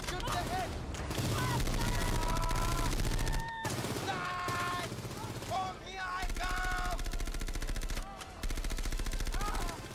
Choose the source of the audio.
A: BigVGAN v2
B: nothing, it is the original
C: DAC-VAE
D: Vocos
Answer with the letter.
B